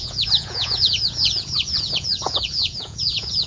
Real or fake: fake